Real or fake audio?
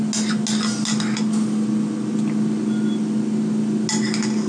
real